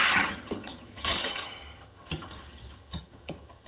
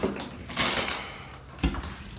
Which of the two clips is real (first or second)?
second